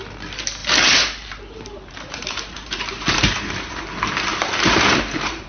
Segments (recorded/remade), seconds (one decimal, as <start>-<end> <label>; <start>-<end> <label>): 0.0-0.6 recorded; 0.6-3.7 remade; 3.7-4.3 recorded; 4.3-5.5 remade